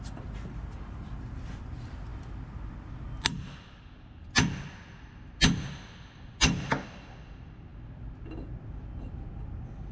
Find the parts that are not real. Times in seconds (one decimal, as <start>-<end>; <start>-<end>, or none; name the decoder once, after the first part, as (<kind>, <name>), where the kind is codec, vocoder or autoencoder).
none